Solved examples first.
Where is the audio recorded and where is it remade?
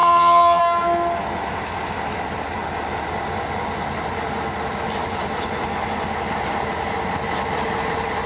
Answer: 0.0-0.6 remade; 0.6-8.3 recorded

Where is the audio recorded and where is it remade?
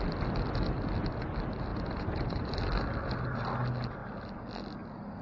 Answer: 0.0-1.7 recorded; 1.7-2.6 remade; 2.6-5.2 recorded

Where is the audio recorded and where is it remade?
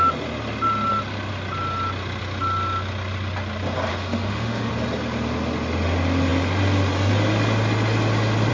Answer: 0.0-3.9 recorded; 3.9-4.7 remade; 4.7-8.5 recorded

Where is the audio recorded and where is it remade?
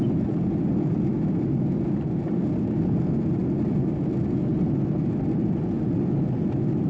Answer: 0.0-6.9 recorded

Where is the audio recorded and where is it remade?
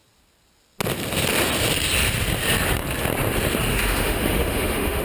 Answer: 0.0-3.7 recorded; 3.7-5.0 remade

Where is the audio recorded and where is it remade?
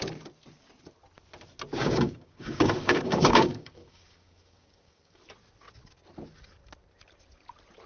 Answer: 0.0-1.7 recorded; 1.7-5.2 remade; 5.2-7.9 recorded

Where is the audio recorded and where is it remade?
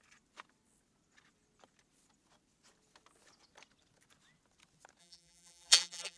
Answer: 0.0-5.0 recorded; 5.0-6.2 remade